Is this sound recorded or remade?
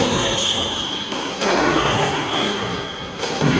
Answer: remade